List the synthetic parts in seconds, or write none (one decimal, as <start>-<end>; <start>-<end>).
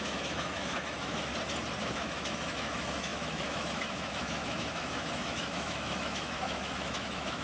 0.0-1.3; 1.8-7.4